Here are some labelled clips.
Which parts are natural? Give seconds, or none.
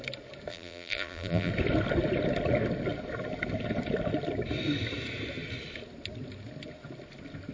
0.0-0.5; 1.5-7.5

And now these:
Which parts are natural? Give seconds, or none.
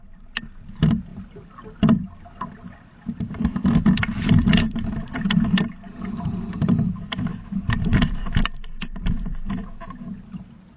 0.0-1.1; 5.7-7.3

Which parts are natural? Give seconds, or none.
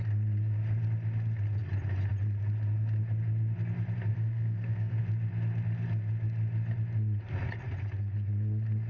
0.0-4.1; 5.0-8.9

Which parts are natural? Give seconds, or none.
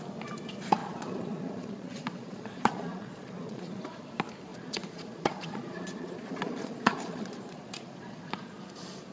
0.0-0.8; 4.0-4.5; 8.6-9.1